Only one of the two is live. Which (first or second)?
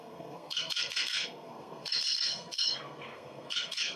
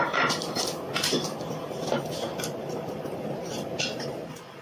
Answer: second